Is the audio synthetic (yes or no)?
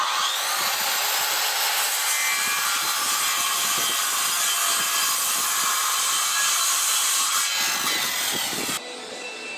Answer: no